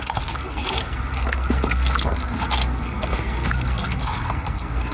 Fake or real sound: fake